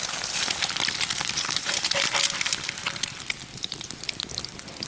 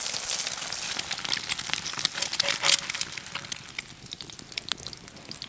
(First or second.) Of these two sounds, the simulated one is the first